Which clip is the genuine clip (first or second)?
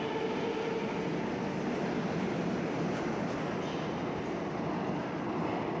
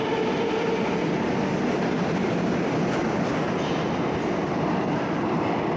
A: first